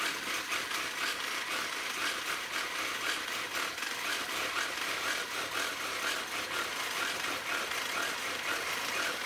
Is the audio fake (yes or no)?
yes